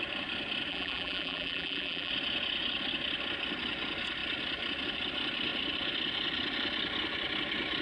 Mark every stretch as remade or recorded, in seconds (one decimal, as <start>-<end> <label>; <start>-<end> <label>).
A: 0.0-0.7 recorded; 0.7-2.1 remade; 2.1-7.8 recorded